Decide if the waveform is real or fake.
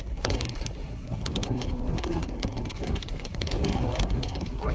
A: fake